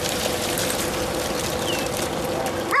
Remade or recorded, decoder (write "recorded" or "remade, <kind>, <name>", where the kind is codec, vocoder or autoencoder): recorded